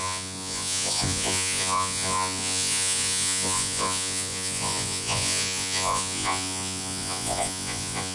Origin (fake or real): fake